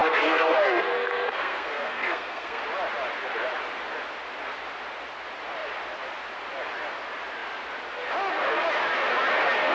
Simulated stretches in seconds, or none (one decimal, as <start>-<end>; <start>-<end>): 0.0-2.6